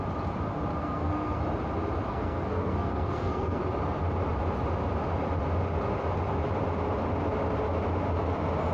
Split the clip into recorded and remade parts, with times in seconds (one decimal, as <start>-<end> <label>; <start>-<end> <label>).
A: 0.0-0.8 recorded; 0.8-1.4 remade; 1.4-2.1 recorded; 2.1-3.6 remade; 3.6-8.7 recorded